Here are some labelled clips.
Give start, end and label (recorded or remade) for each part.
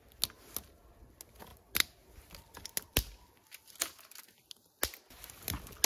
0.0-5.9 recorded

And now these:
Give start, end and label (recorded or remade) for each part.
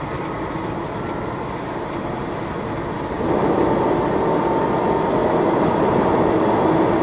0.0-7.0 recorded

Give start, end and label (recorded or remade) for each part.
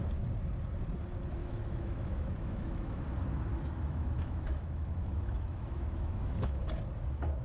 0.0-1.4 recorded; 1.4-3.0 remade; 3.0-3.5 recorded; 3.5-6.6 remade; 6.6-7.4 recorded